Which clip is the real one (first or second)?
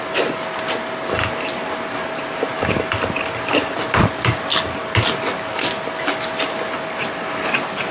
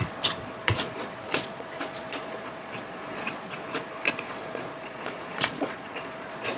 first